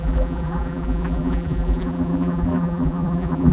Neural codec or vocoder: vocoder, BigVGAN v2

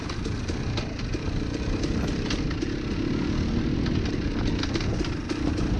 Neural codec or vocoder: none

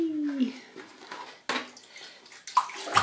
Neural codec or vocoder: none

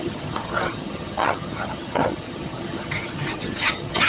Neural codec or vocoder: vocoder, HiFi-GAN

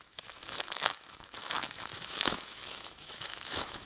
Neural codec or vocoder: autoencoder, DAC-VAE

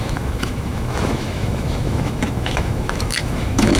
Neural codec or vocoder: autoencoder, DAC-VAE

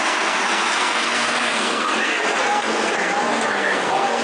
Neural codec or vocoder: codec, SNAC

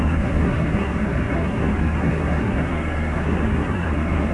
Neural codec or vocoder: codec, SNAC